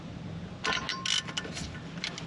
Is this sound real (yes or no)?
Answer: yes